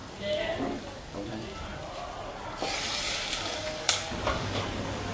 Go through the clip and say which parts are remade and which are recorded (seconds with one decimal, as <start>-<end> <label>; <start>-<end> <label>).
0.0-3.2 recorded; 3.2-4.6 remade; 4.6-5.1 recorded